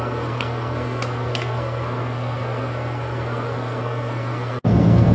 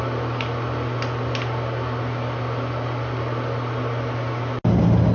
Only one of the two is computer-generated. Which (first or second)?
first